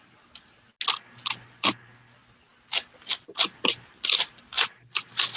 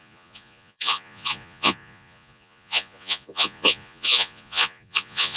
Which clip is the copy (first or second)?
second